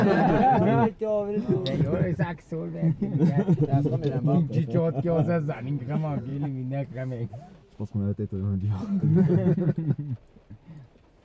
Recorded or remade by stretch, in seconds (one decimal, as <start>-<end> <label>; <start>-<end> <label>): 0.0-11.2 recorded